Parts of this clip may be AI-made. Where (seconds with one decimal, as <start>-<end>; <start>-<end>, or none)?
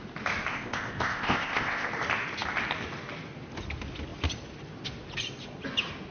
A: 0.5-1.9